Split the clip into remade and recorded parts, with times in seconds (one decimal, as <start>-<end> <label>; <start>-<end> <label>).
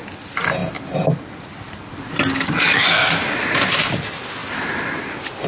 0.0-5.5 recorded